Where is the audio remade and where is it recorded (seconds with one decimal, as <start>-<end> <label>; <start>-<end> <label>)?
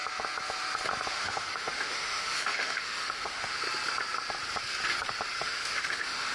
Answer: 0.0-1.1 recorded; 1.1-3.6 remade; 3.6-5.4 recorded; 5.4-6.3 remade